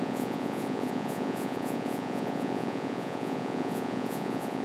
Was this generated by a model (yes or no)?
yes